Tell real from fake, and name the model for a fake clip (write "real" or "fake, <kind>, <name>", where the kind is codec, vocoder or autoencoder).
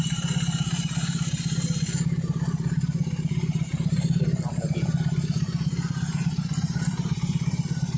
fake, vocoder, BigVGAN v2